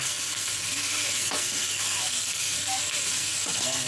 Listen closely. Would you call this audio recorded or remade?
remade